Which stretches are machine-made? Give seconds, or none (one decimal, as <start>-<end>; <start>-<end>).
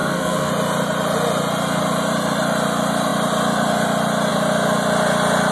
0.0-0.5